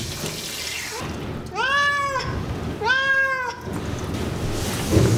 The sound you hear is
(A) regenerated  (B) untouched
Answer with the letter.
B